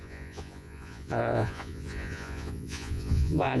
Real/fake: fake